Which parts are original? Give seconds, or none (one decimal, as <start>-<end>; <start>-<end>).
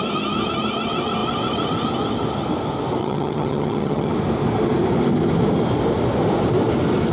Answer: 0.0-3.0; 4.1-7.1